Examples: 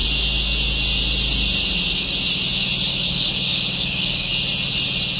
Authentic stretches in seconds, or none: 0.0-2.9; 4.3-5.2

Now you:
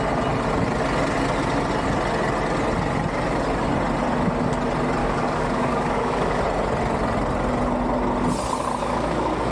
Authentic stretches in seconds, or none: 0.0-5.0; 6.4-8.8

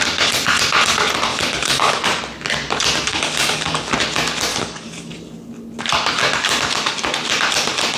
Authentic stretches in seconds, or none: 0.0-1.3; 2.2-3.1; 3.9-4.5; 5.1-8.0

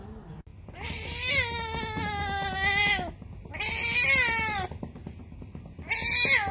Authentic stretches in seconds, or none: 0.0-6.5